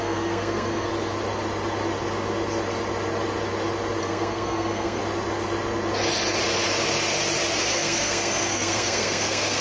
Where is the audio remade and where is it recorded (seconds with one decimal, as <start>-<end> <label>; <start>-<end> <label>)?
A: 0.0-0.9 remade; 0.9-4.0 recorded; 4.0-5.0 remade; 5.0-7.6 recorded; 7.6-9.6 remade